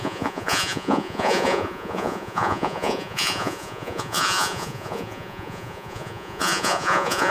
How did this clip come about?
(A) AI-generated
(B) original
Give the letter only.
A